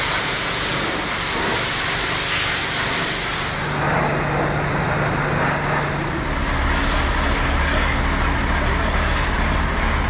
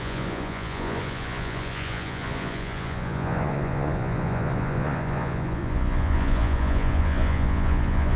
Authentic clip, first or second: first